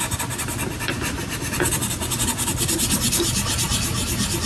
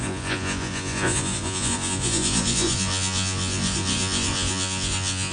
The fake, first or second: second